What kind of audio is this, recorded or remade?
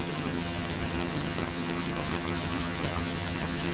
remade